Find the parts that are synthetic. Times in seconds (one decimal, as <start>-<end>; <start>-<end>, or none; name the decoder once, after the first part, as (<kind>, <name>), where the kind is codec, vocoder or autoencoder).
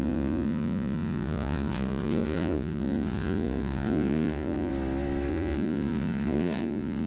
0.0-4.7 (vocoder, Vocos); 5.3-7.1